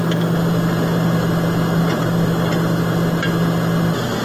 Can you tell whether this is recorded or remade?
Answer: recorded